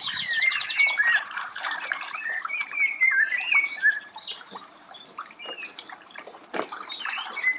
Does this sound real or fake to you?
fake